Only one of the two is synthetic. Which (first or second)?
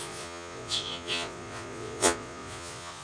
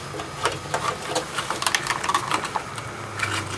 first